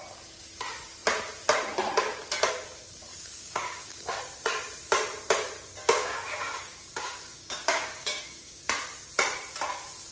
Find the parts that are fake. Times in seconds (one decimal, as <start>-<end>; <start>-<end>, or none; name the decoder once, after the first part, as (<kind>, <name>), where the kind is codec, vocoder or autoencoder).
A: 3.1-4.2 (codec, DAC); 5.8-8.6